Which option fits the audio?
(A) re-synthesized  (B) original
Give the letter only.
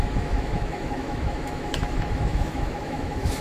A